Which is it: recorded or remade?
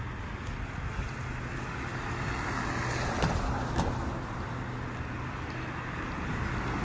recorded